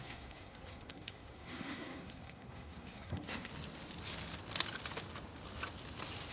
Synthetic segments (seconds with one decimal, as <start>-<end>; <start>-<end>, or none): 0.0-3.5